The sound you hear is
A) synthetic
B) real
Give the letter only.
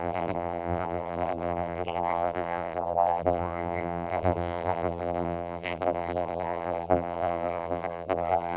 A